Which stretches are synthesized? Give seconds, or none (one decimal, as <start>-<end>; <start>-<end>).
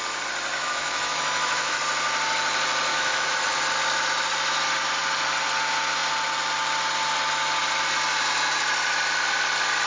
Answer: 0.5-1.8; 2.9-3.6